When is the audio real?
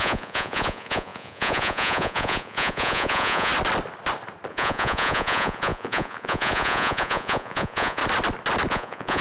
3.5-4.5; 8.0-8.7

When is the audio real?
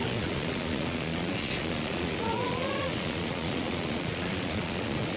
none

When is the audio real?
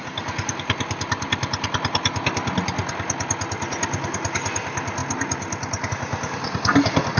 0.0-7.2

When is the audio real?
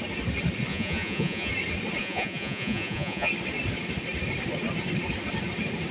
0.0-0.7; 1.5-2.0; 3.3-5.9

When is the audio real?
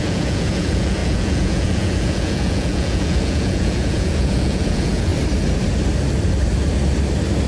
5.1-7.5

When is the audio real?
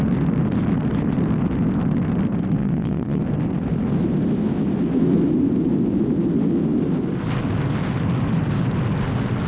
0.0-2.6; 3.2-9.5